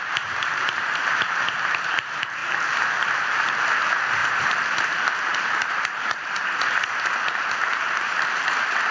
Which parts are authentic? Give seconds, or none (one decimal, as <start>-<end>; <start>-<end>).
6.4-7.7